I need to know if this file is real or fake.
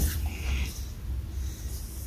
real